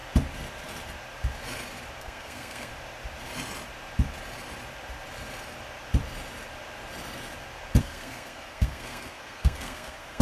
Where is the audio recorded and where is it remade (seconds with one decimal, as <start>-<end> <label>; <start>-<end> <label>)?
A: 0.0-2.0 recorded; 2.0-2.7 remade; 2.7-7.8 recorded; 7.8-10.2 remade